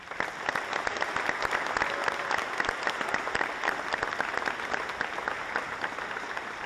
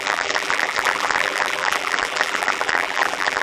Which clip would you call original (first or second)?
first